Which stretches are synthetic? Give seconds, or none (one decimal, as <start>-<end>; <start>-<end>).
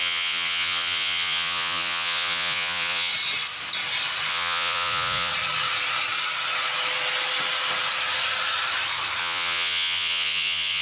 0.0-3.1; 4.3-5.3; 9.2-10.8